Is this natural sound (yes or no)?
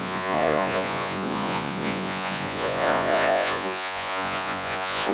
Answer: no